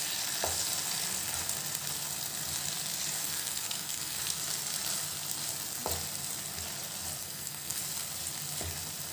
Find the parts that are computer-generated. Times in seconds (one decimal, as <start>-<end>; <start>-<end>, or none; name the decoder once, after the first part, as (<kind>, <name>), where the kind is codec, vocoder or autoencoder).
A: 3.2-4.4 (codec, SNAC); 7.2-7.8